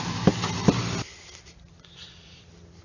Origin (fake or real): real